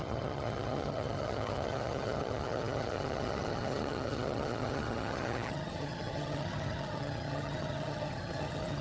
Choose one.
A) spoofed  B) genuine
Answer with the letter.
A